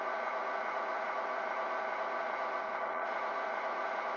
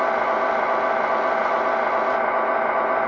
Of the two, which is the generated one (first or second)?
first